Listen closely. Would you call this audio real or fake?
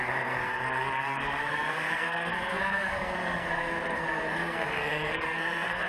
fake